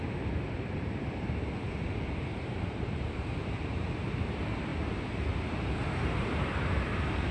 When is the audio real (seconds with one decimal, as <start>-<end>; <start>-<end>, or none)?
4.7-5.5